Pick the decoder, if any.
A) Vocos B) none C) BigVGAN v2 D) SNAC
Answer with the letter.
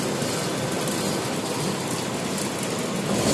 B